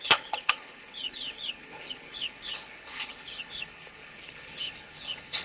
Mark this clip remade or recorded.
remade